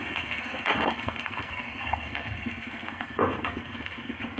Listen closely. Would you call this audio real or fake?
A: fake